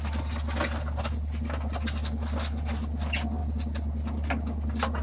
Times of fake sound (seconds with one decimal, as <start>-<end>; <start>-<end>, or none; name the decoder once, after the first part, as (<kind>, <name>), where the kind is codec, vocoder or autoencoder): none